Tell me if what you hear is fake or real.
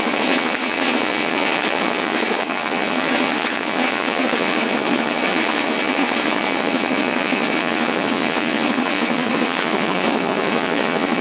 fake